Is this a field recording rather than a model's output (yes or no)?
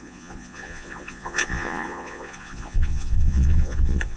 no